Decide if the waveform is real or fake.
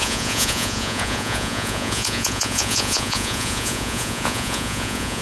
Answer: fake